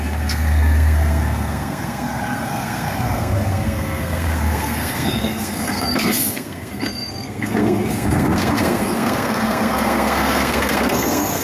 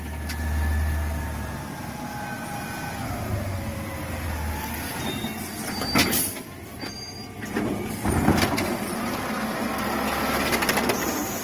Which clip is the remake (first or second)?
first